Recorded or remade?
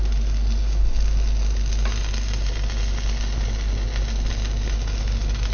recorded